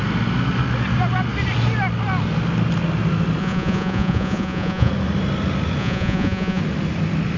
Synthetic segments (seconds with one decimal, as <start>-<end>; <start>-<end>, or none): 3.4-4.9; 5.8-6.6